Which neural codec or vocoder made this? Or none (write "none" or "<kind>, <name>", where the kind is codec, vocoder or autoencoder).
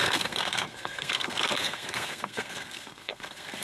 codec, SNAC